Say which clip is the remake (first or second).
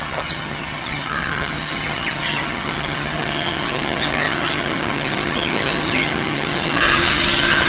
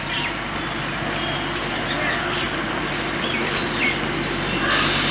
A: first